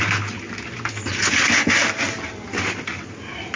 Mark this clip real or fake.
real